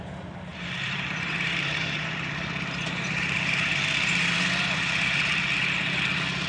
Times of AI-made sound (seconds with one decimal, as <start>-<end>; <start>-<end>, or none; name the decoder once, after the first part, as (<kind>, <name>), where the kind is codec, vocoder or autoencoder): 0.5-4.4 (vocoder, BigVGAN v2)